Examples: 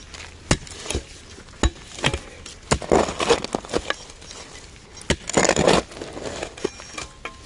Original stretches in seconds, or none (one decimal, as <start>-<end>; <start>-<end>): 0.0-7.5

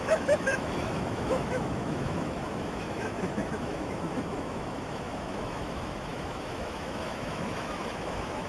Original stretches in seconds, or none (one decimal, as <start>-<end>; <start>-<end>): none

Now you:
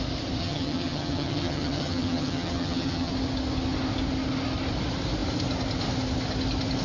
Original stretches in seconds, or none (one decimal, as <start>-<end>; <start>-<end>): 0.0-0.4; 3.1-6.8